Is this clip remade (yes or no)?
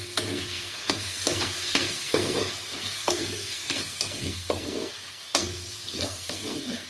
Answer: yes